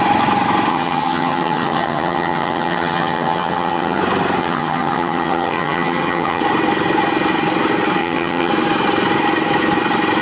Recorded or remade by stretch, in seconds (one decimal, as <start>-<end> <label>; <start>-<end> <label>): 0.0-0.7 recorded; 0.7-4.0 remade; 4.0-4.4 recorded; 4.4-6.4 remade; 6.4-8.0 recorded; 8.0-8.5 remade; 8.5-10.2 recorded